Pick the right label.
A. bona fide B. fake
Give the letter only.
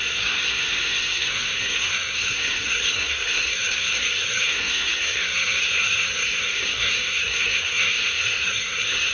B